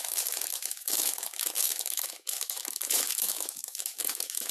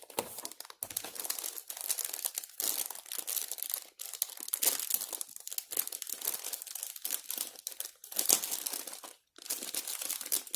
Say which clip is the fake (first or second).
first